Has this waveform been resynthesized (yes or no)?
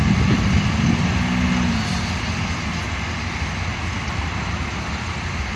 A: no